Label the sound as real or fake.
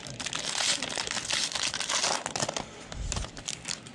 real